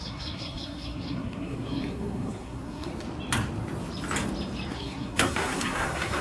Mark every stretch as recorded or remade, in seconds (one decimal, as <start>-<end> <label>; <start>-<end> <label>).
0.0-2.9 remade; 2.9-4.7 recorded; 4.7-6.2 remade